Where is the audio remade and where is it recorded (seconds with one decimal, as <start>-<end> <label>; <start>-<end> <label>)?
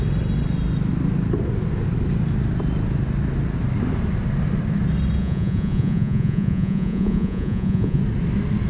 0.0-5.2 recorded; 5.2-8.0 remade; 8.0-8.7 recorded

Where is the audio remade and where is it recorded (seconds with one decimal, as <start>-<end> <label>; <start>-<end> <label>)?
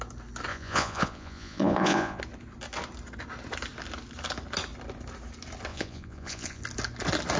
0.0-0.5 recorded; 0.5-2.2 remade; 2.2-5.7 recorded; 5.7-6.6 remade; 6.6-7.4 recorded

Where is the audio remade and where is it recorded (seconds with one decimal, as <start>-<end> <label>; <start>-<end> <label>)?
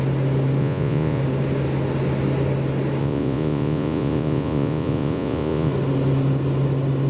0.0-0.6 recorded; 0.6-1.2 remade; 1.2-3.0 recorded; 3.0-5.7 remade; 5.7-7.1 recorded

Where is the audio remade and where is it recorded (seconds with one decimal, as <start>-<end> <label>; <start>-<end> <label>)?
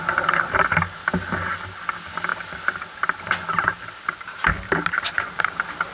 0.0-5.9 recorded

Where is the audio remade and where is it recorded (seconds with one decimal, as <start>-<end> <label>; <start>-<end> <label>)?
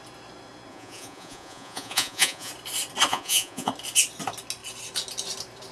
0.0-0.7 recorded; 0.7-2.5 remade; 2.5-3.1 recorded; 3.1-3.7 remade; 3.7-5.7 recorded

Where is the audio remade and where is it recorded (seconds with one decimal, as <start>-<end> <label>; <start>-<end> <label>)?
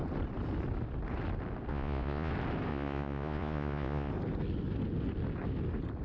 0.0-1.7 recorded; 1.7-2.3 remade; 2.3-2.7 recorded; 2.7-4.1 remade; 4.1-6.0 recorded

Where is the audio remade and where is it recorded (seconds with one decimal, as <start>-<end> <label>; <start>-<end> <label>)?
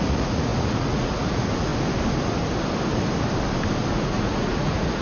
0.0-1.7 remade; 1.7-3.9 recorded; 3.9-5.0 remade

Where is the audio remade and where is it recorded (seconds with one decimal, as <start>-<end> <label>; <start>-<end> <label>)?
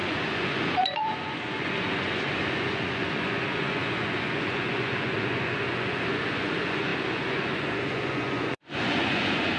0.0-9.6 remade